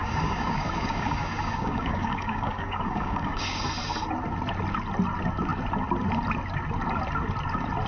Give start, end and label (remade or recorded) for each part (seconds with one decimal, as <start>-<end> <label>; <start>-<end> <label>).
0.0-3.6 remade; 3.6-7.9 recorded